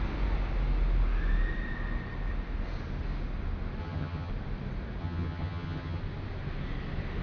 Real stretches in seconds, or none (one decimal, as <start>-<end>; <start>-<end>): 0.0-3.8; 4.3-5.0; 6.0-7.2